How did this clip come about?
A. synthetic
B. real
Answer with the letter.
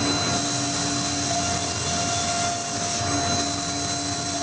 B